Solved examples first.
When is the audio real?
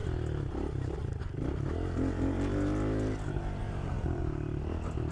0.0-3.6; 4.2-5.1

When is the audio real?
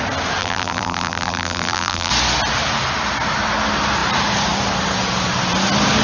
0.0-0.4; 2.1-6.0